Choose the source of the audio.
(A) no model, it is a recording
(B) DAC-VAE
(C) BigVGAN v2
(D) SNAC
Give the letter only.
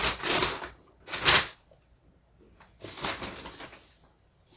A